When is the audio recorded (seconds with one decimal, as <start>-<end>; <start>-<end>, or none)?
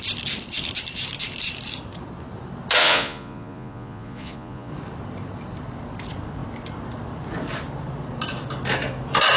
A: 0.0-2.8; 4.7-9.4